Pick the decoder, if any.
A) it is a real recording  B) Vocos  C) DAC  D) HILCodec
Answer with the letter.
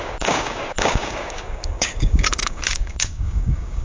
C